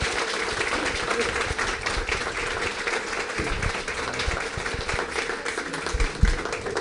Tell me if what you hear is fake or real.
real